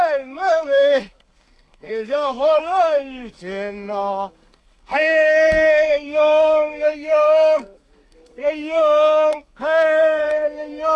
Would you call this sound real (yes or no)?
no